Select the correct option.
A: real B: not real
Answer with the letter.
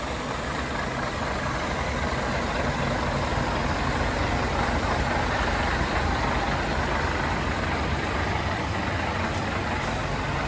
A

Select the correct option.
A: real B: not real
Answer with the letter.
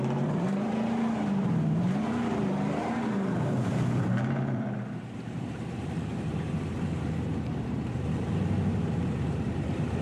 B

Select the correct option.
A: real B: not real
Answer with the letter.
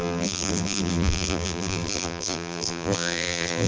B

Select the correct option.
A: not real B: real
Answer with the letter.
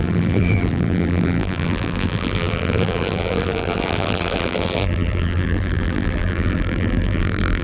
A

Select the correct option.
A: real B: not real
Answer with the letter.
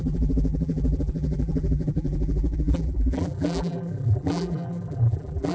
B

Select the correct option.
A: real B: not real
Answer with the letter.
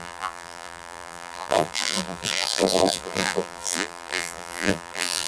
B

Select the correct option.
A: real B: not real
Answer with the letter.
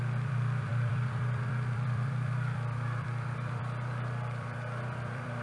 B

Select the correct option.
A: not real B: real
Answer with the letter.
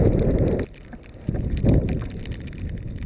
B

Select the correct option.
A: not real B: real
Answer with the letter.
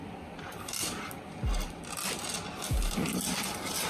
B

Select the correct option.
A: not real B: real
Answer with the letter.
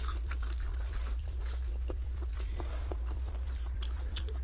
A